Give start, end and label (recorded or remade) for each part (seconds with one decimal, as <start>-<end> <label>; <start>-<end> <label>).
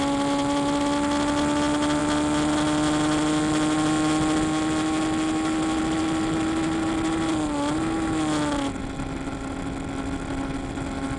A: 0.0-11.2 recorded